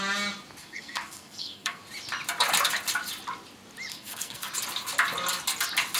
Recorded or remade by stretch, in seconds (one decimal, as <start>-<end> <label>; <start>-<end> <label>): 0.0-0.6 recorded; 0.6-1.8 remade; 1.8-3.9 recorded; 3.9-4.5 remade; 4.5-6.0 recorded